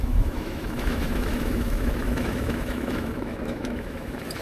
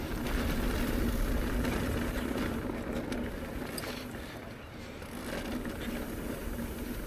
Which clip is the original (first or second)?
second